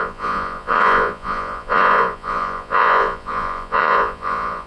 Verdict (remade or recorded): remade